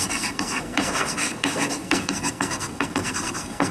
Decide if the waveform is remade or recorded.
remade